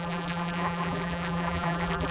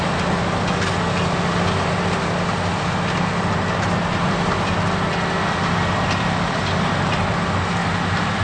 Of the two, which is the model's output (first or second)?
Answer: first